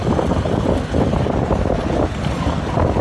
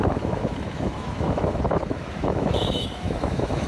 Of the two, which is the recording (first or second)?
first